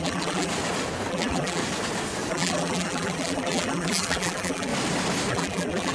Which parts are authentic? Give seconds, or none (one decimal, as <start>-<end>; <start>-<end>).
0.5-1.1; 1.6-2.3; 4.7-5.3